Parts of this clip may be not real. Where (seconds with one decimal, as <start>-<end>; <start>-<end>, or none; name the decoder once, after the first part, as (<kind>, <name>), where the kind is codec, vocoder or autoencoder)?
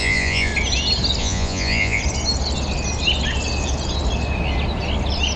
0.0-0.5 (vocoder, Vocos); 1.2-2.0